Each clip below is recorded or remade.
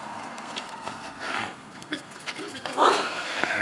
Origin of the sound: remade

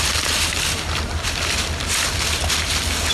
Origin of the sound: recorded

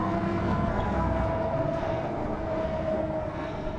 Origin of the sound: remade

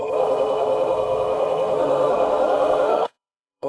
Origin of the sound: remade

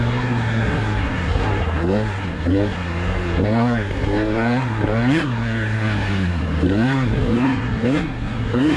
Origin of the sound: remade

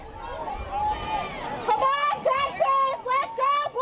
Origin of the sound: recorded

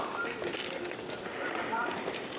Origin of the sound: recorded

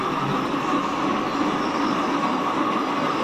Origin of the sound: recorded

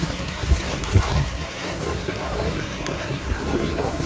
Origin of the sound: remade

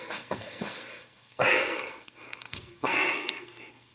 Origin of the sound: remade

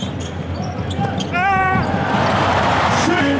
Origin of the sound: recorded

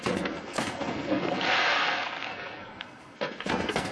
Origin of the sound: remade